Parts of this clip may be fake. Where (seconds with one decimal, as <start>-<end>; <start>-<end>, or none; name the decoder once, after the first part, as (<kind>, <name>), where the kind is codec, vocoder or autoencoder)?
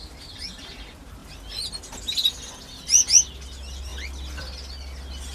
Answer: none